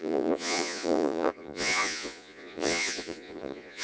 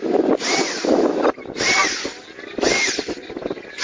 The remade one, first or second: first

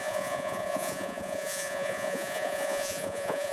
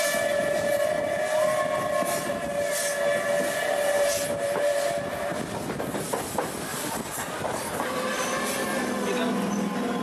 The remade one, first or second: first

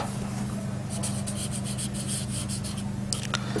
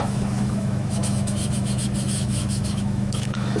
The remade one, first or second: second